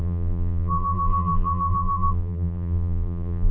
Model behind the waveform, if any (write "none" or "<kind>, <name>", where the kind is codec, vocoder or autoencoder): vocoder, BigVGAN v2